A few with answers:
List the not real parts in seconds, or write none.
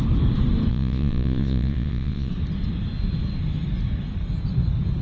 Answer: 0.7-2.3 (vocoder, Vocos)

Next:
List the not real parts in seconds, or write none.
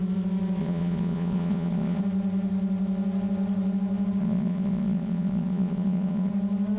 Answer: 0.6-2.0 (vocoder, Vocos); 4.2-6.3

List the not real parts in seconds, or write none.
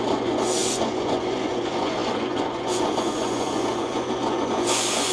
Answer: 0.0-5.1 (vocoder, Vocos)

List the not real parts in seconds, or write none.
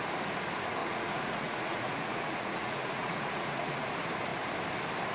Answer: 0.8-3.9 (vocoder, Vocos)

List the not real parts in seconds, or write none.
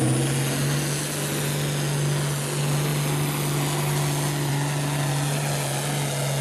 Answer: none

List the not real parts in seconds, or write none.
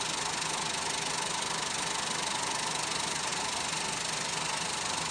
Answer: none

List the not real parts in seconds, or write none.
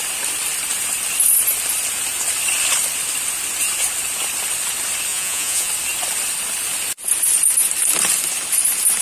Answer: 5.1-5.7 (vocoder, Vocos)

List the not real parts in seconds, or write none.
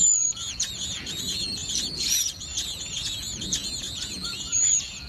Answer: 0.0-5.1 (vocoder, Vocos)